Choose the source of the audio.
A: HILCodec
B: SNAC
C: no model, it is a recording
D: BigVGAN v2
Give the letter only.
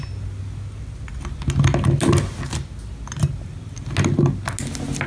C